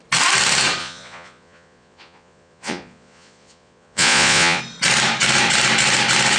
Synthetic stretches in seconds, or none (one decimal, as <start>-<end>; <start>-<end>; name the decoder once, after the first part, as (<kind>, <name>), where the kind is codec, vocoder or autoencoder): 0.8-4.6 (vocoder, Vocos)